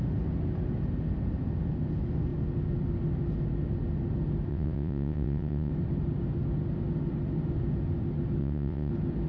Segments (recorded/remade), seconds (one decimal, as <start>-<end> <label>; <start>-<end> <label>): 0.0-4.5 recorded; 4.5-5.7 remade; 5.7-8.4 recorded; 8.4-8.9 remade; 8.9-9.3 recorded